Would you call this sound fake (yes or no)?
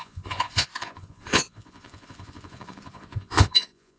yes